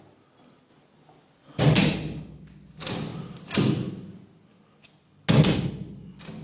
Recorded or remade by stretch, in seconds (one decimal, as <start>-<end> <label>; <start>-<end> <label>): 0.0-6.4 recorded